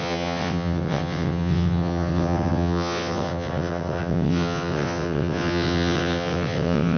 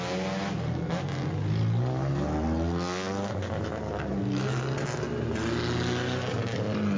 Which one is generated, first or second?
first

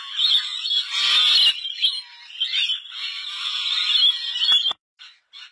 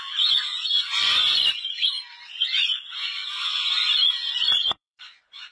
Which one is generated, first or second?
second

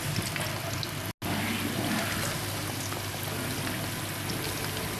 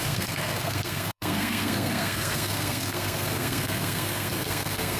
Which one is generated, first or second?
second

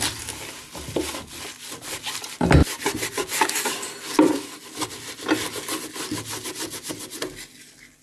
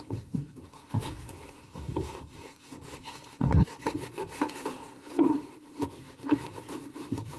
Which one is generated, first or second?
second